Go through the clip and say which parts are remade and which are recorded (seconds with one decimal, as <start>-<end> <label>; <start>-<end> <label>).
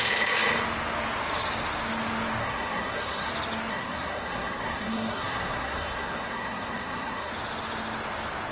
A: 0.0-2.4 recorded; 2.4-3.3 remade; 3.3-3.7 recorded; 3.7-7.3 remade; 7.3-8.5 recorded